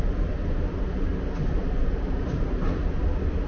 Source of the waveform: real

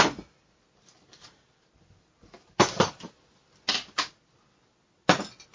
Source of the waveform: real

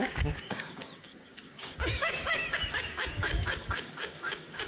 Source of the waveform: fake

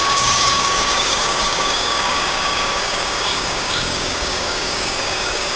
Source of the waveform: fake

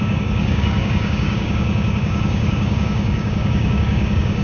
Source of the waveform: fake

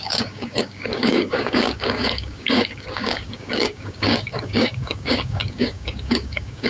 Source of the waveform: fake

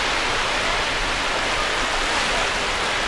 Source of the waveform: real